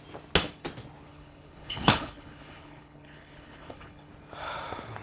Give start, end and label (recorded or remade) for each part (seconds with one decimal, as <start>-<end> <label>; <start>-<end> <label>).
0.0-1.1 recorded; 1.1-4.1 remade; 4.1-5.0 recorded